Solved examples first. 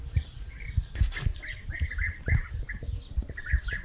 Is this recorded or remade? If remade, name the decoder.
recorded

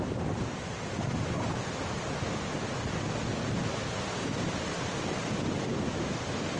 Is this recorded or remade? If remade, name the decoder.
recorded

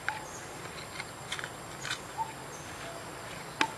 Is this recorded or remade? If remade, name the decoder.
recorded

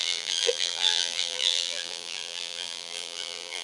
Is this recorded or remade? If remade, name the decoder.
remade, vocoder, BigVGAN v2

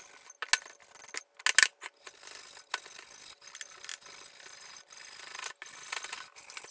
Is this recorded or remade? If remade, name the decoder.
recorded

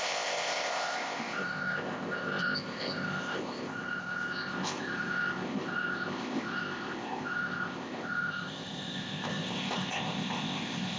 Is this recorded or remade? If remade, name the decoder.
remade, codec, ZipCodec